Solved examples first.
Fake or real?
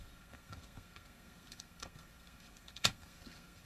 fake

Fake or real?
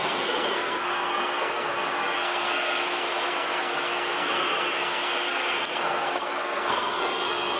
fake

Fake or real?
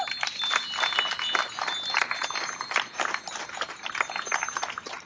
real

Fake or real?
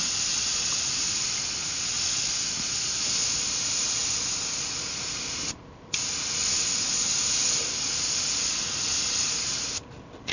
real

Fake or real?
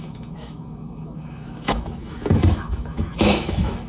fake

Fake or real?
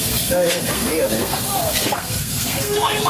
fake